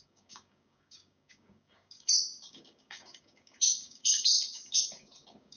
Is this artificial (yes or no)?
yes